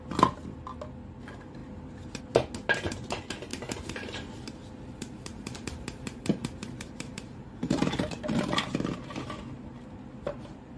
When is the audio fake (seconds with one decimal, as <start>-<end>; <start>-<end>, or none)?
3.5-8.6